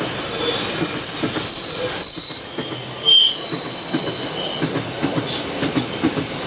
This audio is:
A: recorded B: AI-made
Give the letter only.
A